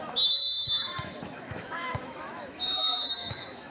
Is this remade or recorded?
remade